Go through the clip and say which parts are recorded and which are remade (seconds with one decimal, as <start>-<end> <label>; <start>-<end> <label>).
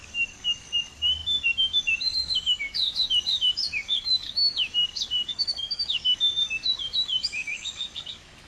0.0-8.5 remade